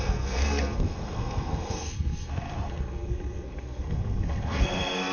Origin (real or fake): fake